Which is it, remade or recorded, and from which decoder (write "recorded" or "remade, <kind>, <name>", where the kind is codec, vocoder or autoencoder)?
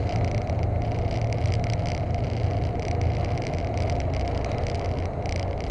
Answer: recorded